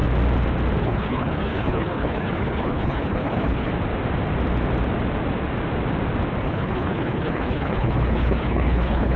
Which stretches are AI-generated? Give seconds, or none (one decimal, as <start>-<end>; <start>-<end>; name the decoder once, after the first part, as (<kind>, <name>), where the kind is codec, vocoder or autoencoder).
0.8-3.7 (codec, HILCodec); 6.4-9.2